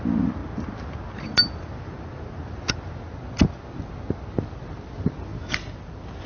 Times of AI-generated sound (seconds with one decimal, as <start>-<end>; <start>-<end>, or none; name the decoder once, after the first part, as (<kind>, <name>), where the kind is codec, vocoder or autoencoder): none